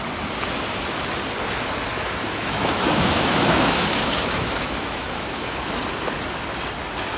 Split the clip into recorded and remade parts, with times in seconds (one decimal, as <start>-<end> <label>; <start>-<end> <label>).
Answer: 0.0-1.9 recorded; 1.9-5.7 remade; 5.7-7.2 recorded